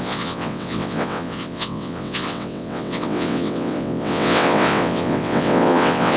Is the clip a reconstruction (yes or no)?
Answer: yes